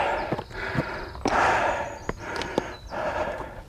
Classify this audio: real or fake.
real